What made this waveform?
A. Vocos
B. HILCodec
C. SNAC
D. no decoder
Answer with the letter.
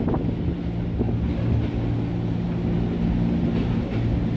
D